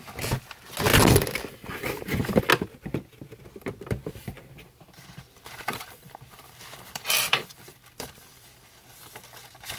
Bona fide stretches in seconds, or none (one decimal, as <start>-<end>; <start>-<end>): 0.0-0.9; 2.4-4.0; 8.6-9.8